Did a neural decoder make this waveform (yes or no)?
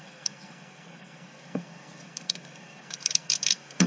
yes